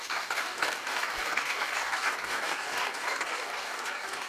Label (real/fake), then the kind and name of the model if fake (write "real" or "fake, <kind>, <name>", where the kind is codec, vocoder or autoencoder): fake, codec, DAC